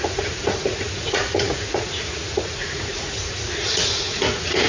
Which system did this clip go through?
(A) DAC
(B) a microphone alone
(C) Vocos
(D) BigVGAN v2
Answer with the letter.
C